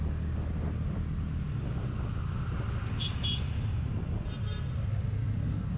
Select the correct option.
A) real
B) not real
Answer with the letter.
A